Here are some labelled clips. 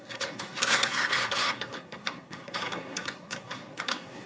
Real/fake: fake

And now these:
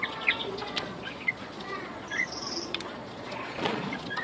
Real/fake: fake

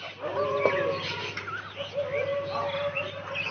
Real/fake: real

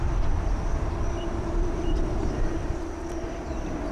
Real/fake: fake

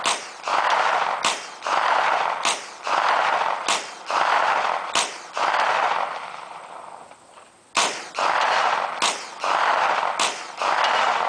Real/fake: real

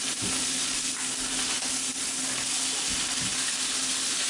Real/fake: real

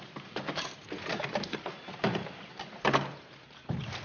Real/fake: fake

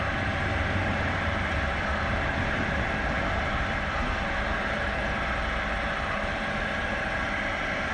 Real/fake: fake